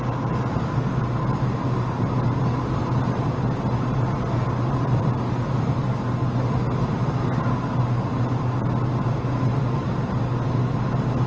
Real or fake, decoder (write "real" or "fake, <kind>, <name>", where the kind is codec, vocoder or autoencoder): real